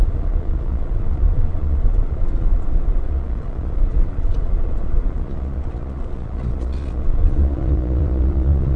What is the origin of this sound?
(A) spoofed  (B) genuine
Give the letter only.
A